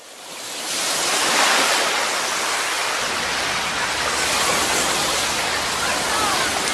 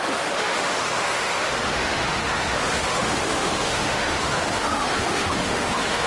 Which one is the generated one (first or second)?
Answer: second